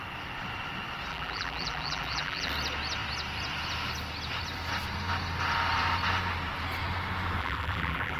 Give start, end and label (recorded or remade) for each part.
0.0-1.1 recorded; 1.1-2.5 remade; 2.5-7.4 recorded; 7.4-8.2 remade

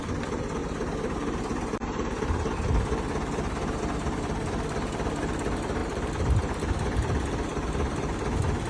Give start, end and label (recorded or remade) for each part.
0.0-0.6 recorded; 0.6-3.8 remade; 3.8-5.8 recorded; 5.8-6.6 remade; 6.6-7.5 recorded; 7.5-8.1 remade; 8.1-8.7 recorded